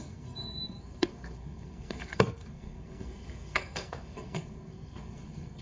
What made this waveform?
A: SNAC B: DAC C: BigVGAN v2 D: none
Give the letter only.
A